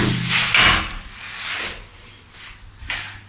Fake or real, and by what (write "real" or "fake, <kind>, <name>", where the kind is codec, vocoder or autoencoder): real